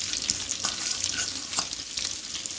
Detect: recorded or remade recorded